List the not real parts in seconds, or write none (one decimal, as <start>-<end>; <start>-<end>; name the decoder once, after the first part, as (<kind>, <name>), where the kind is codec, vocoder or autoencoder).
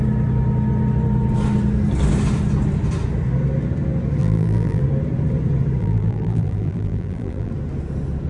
4.2-4.8 (vocoder, BigVGAN v2); 5.8-7.5